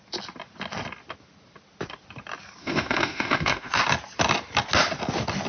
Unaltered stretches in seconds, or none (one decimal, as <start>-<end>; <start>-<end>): 0.0-2.6; 3.8-5.5